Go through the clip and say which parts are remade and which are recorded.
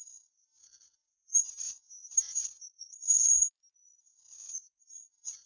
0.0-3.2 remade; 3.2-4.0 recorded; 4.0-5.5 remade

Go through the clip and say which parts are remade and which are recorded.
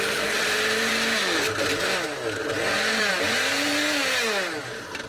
0.0-0.9 remade; 0.9-3.0 recorded; 3.0-4.0 remade; 4.0-4.6 recorded; 4.6-5.1 remade